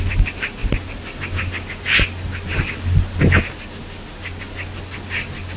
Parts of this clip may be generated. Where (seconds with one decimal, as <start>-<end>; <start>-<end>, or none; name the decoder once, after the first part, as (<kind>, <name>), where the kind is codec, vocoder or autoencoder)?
none